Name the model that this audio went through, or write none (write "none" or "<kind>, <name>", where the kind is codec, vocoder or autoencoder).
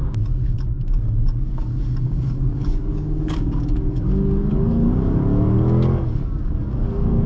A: codec, DAC